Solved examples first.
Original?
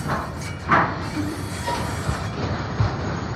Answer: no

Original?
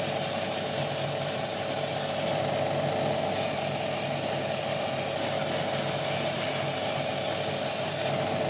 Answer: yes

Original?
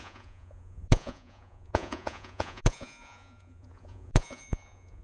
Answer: no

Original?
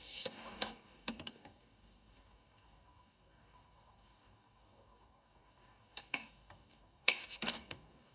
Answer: no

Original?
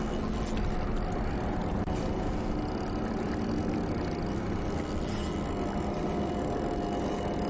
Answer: yes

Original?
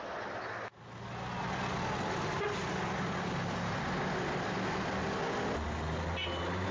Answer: yes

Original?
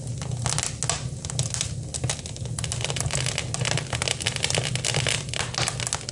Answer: yes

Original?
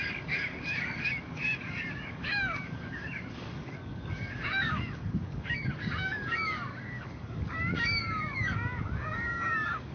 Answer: no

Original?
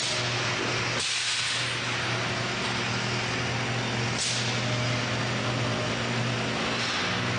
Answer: yes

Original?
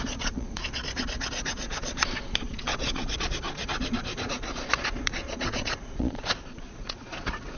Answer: no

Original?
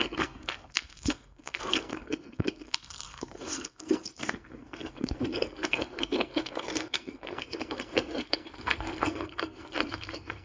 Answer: no